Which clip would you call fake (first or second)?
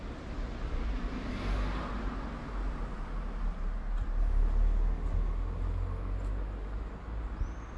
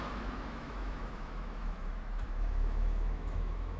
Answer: second